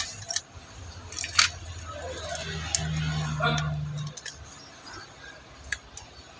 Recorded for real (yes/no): yes